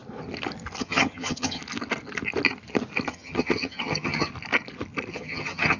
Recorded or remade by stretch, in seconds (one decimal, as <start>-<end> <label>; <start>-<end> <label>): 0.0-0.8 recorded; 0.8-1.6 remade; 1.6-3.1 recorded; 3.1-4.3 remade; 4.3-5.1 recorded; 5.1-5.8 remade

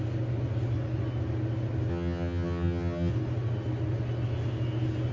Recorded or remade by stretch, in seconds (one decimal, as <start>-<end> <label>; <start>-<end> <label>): 0.0-1.9 recorded; 1.9-3.1 remade; 3.1-5.1 recorded

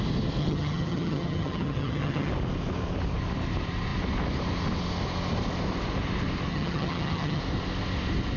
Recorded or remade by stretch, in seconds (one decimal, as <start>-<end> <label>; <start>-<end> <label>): 0.0-0.4 recorded; 0.4-2.3 remade; 2.3-6.5 recorded; 6.5-7.4 remade; 7.4-8.4 recorded

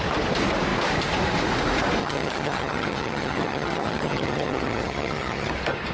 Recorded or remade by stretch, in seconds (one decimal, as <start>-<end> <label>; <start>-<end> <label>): 0.0-2.0 recorded; 2.0-5.5 remade; 5.5-5.9 recorded